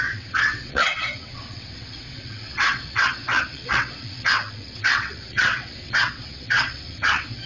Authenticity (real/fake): fake